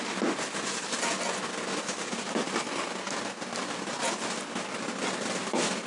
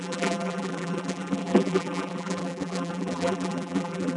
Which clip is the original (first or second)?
first